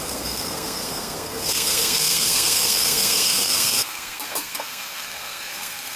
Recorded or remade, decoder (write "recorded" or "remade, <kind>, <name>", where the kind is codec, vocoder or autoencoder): remade, codec, SNAC